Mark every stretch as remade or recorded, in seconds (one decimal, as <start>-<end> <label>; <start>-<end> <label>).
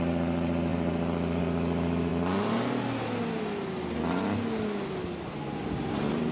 0.0-0.7 recorded; 0.7-1.4 remade; 1.4-6.3 recorded